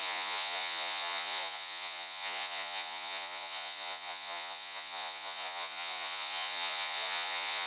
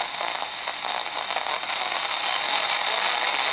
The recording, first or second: second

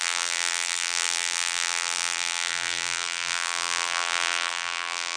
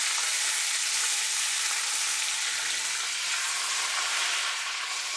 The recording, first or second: second